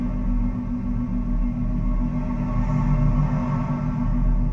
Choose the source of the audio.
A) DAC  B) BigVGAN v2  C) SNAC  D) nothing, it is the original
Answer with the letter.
D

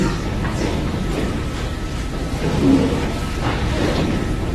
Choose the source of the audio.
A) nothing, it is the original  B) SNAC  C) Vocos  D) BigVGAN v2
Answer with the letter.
A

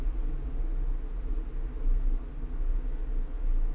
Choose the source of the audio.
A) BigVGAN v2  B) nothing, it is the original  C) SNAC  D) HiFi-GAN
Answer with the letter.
B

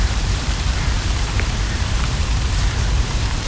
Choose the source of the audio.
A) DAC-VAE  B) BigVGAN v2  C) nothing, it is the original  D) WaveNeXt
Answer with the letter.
B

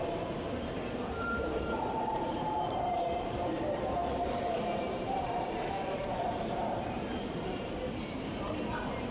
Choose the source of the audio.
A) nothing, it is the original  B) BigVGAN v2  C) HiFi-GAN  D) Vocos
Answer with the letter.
B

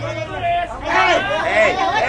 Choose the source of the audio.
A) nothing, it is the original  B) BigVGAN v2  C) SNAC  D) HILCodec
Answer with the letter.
A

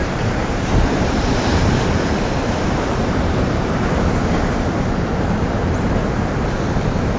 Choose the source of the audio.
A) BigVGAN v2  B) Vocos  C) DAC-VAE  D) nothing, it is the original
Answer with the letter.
A